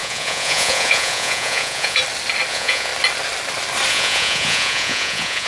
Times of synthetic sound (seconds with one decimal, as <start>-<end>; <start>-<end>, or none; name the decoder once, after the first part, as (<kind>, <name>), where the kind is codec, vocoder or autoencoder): 0.0-2.0 (vocoder, Vocos); 2.5-2.9; 3.9-5.5